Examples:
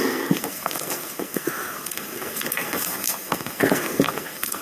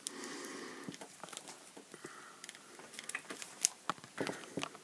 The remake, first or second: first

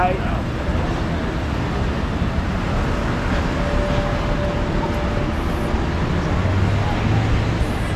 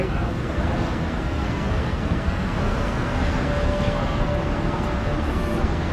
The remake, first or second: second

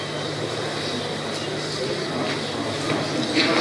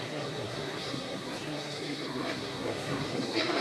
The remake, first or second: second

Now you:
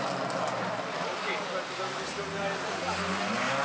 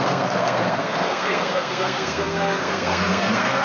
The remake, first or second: second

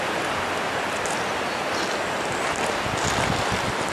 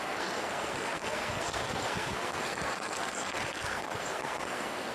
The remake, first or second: second